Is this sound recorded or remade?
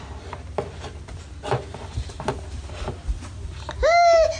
recorded